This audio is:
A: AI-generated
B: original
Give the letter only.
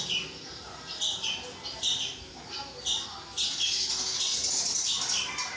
B